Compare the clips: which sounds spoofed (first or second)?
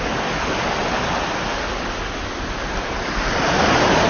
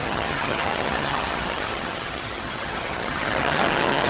second